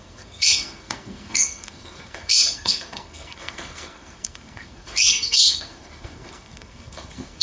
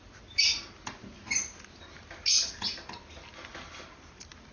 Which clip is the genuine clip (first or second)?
second